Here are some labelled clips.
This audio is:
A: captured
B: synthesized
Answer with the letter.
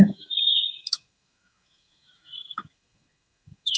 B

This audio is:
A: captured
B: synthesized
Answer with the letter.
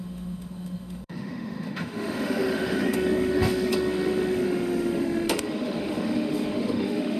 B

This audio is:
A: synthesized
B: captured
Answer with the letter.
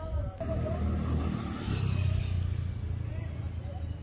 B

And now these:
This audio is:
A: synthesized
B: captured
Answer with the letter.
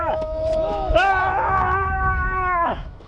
A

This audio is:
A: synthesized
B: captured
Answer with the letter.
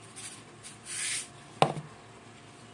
B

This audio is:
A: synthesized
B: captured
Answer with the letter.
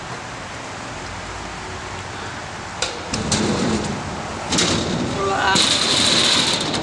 B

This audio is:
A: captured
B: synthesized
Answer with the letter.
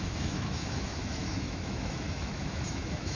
B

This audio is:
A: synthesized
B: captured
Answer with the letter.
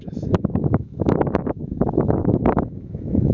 A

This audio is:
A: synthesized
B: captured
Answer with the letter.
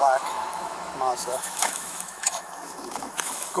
A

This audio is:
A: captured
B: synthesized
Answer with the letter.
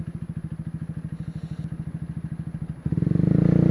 A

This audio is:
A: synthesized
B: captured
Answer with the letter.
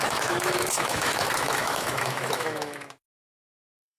A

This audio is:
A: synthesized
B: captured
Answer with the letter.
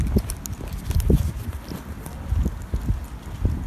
B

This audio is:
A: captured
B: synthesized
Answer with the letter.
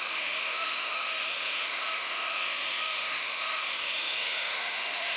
B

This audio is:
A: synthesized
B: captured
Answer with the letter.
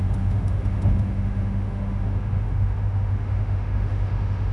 A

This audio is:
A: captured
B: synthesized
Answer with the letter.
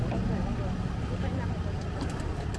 A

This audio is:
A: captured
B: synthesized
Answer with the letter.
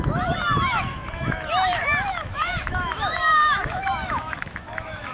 B